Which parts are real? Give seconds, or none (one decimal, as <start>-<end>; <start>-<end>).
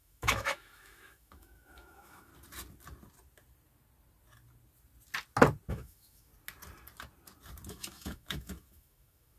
2.3-5.7; 6.3-7.7